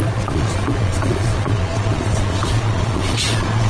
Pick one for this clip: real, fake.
fake